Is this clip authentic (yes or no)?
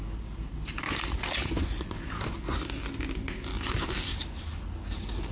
yes